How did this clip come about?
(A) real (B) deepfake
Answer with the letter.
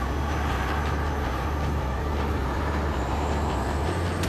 A